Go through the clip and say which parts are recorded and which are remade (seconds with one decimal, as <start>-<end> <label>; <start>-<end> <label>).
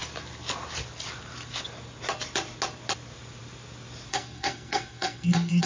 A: 0.0-4.1 recorded; 4.1-5.7 remade